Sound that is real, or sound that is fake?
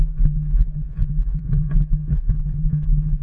fake